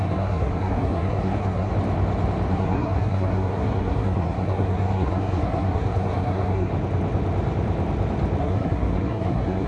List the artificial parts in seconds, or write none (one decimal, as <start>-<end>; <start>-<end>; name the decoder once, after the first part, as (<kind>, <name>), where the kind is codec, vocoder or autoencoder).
0.0-1.7 (codec, SNAC); 2.5-6.7; 8.4-9.7